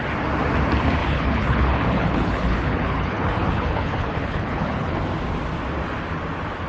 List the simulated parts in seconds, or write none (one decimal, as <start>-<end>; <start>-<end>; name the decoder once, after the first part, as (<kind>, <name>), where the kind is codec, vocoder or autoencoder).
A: 1.0-5.0 (codec, HILCodec)